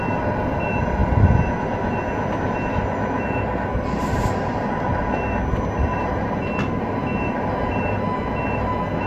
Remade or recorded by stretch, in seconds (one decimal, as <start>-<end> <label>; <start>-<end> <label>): 0.0-5.9 recorded; 5.9-6.4 remade; 6.4-9.1 recorded